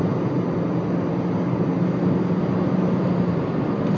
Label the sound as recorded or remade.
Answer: recorded